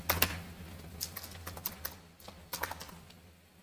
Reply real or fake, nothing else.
real